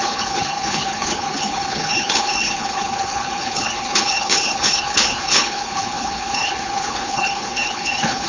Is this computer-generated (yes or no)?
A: yes